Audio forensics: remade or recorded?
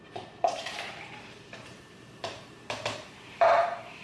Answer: remade